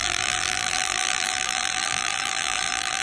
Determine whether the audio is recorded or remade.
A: remade